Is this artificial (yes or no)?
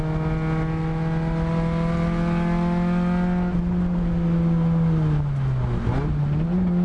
no